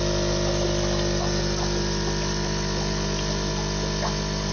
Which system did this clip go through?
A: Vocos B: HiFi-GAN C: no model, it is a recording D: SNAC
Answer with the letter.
C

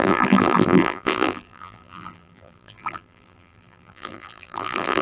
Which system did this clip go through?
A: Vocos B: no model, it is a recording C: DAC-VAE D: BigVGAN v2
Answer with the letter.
D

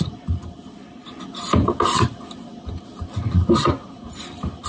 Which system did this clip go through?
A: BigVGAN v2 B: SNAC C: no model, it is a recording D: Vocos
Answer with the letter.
C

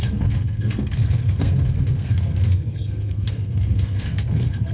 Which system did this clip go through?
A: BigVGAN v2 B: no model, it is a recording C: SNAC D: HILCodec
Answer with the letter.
C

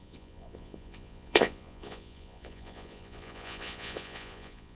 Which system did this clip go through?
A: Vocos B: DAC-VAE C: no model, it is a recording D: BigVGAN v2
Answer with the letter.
A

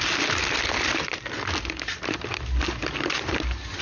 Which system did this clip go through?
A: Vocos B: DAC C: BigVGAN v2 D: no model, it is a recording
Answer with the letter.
D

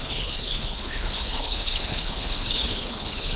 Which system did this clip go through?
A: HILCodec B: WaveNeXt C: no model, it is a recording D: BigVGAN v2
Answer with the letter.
A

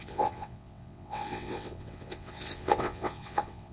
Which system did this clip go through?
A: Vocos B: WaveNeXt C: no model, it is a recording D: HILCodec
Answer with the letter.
B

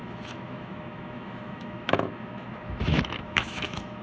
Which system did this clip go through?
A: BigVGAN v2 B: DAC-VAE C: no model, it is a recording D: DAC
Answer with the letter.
B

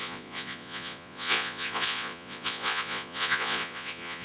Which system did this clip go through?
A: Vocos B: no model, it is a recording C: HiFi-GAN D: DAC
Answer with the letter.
A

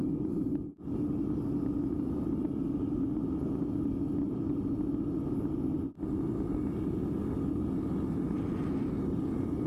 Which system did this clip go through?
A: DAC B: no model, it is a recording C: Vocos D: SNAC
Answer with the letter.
B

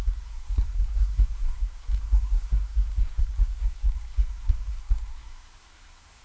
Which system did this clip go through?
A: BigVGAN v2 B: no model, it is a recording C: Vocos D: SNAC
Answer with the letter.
D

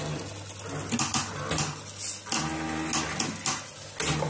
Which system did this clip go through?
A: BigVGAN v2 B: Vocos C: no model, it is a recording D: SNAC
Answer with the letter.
C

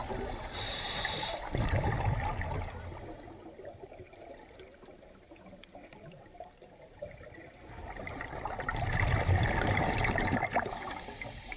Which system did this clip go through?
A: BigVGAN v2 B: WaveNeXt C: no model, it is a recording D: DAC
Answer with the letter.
A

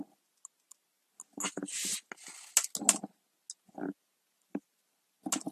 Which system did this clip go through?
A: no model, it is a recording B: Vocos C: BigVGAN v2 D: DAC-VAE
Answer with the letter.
A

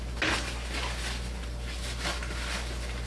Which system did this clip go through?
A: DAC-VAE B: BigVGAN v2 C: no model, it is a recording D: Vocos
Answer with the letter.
C